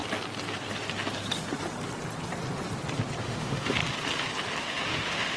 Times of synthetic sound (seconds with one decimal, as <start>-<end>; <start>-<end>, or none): 3.2-3.8; 4.6-5.4